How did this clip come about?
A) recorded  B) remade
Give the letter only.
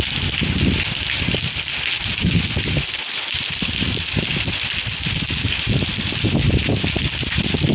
A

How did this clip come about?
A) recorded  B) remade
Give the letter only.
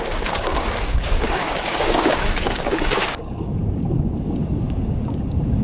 B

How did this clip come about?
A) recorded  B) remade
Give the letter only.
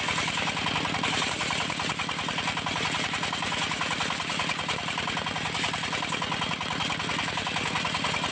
A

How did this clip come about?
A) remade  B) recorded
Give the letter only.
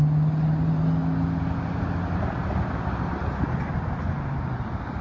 B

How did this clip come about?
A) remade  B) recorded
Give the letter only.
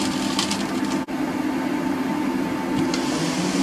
B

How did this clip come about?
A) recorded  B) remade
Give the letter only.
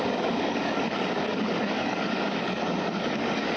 B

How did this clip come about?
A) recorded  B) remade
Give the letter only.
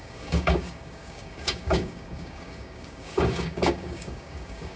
B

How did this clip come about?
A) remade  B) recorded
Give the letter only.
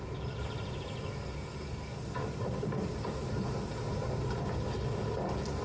B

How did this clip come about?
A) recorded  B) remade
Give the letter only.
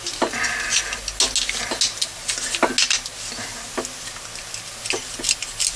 A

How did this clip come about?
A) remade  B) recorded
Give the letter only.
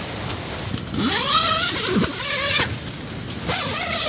B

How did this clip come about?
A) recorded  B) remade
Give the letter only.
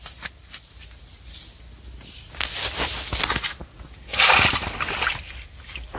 A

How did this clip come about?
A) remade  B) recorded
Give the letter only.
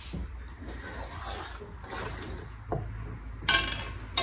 B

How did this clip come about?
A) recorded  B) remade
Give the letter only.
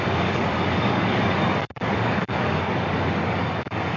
B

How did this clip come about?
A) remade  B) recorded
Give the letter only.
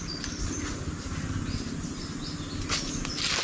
B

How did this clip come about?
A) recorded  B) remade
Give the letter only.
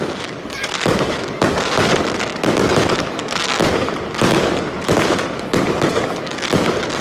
B